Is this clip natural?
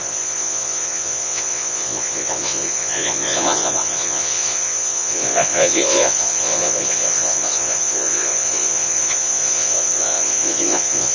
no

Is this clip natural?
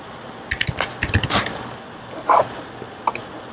yes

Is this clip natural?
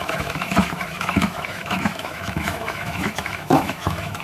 no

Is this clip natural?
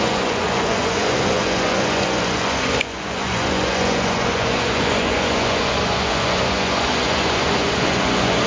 no